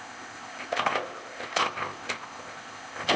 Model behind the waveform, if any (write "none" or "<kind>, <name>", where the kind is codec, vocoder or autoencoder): codec, ZipCodec